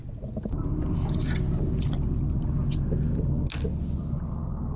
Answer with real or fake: real